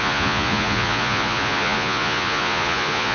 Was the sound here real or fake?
fake